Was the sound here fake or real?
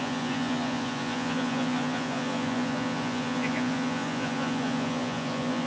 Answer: fake